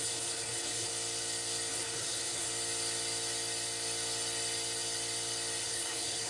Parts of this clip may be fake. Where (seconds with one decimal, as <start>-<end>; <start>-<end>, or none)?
0.0-0.9; 1.7-2.5; 5.6-6.3

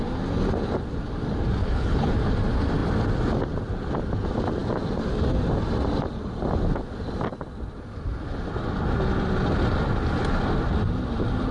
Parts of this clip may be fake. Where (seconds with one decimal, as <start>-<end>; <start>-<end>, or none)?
1.6-2.1

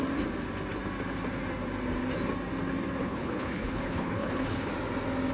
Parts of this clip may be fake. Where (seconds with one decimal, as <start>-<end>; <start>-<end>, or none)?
3.0-4.7

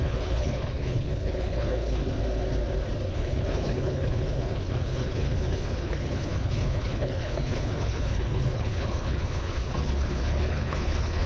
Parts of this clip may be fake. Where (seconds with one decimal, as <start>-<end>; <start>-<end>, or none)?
0.0-2.0; 3.1-11.3

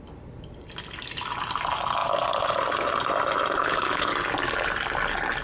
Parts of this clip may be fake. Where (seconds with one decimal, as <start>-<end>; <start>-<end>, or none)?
3.6-4.1